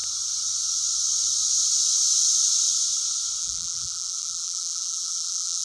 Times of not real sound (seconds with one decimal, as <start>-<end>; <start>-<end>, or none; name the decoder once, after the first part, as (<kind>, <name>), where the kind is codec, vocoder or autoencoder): 3.4-5.6 (vocoder, BigVGAN v2)